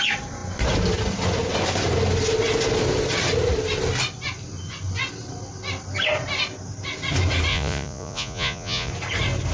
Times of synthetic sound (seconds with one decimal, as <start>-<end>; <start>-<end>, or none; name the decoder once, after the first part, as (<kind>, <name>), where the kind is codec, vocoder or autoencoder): 7.5-8.9 (vocoder, Vocos)